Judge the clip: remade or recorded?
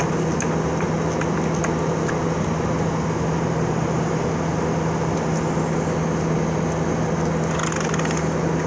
recorded